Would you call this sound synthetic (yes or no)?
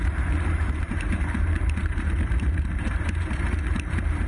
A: yes